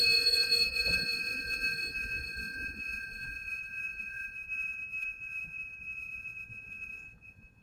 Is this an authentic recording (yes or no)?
no